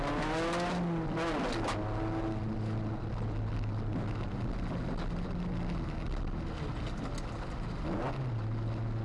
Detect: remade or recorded recorded